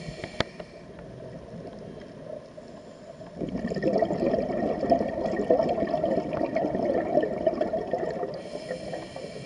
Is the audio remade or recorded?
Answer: recorded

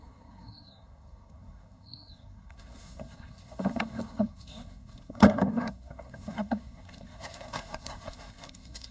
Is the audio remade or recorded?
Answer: remade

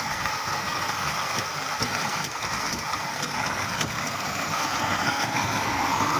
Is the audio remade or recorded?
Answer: remade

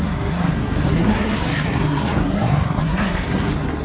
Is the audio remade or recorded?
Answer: remade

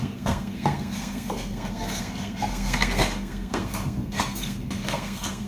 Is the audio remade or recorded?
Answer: remade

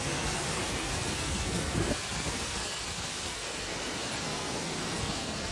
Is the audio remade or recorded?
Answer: remade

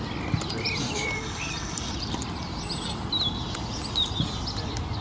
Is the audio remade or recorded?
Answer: recorded